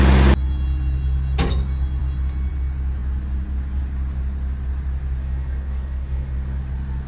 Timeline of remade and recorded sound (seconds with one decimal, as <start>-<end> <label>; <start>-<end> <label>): 0.0-5.2 recorded; 5.2-6.6 remade; 6.6-7.1 recorded